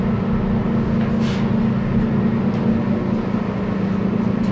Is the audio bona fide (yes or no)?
yes